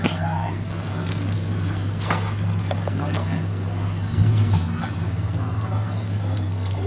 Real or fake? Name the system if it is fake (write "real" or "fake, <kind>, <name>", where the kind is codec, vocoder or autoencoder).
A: fake, codec, SNAC